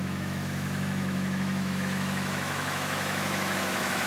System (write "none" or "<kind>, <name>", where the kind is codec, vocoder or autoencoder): autoencoder, DAC-VAE